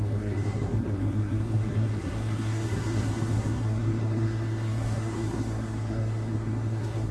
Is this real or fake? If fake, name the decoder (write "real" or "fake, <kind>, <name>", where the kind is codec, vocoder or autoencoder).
fake, codec, SNAC